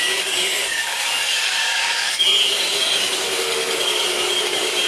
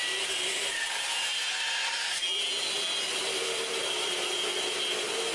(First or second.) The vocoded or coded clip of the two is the first